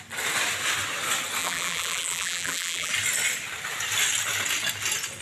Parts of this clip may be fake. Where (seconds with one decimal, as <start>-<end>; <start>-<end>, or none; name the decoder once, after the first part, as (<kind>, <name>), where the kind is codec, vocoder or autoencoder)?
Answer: 1.4-2.9 (vocoder, BigVGAN v2)